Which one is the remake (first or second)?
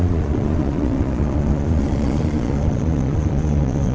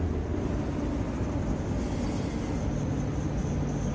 first